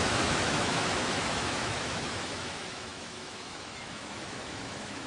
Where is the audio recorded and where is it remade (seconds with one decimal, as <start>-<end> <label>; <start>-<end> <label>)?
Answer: 0.0-5.1 remade